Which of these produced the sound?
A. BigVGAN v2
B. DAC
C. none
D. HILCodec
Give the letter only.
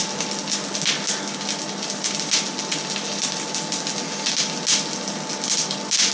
C